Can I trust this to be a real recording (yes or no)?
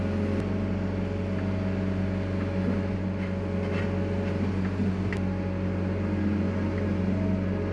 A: yes